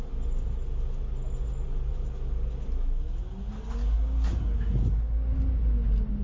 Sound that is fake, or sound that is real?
real